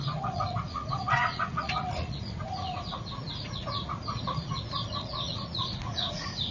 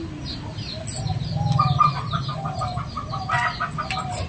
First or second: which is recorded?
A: second